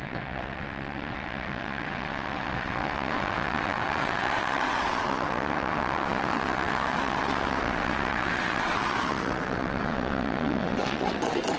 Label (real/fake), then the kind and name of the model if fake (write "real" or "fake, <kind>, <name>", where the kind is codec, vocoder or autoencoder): fake, vocoder, WaveNeXt